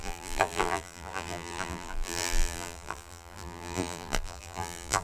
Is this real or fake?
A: fake